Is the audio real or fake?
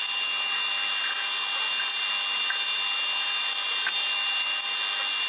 real